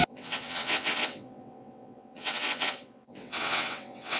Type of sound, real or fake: fake